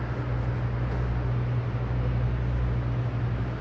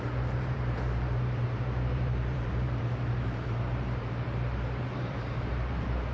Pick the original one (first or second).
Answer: first